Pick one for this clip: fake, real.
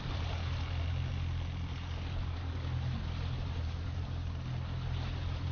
real